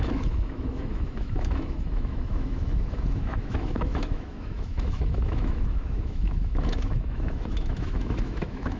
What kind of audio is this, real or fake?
fake